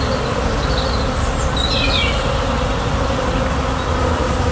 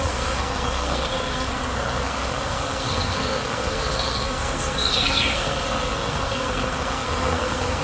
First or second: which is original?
first